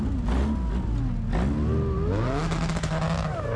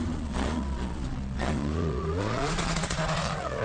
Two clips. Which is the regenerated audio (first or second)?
second